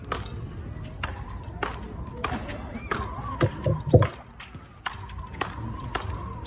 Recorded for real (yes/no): yes